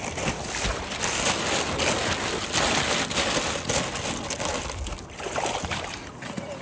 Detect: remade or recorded recorded